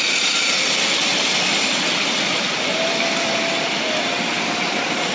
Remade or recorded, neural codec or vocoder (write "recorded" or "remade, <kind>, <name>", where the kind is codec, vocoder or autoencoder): recorded